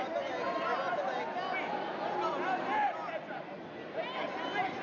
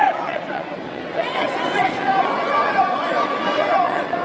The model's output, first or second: second